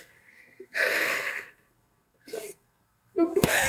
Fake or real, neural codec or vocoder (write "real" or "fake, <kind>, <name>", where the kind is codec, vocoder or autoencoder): fake, codec, SNAC